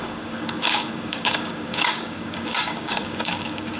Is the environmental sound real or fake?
fake